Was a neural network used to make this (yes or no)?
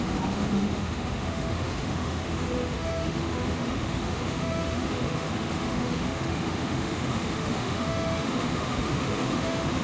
yes